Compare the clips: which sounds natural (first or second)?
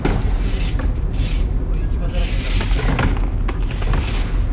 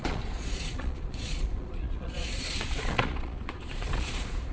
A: first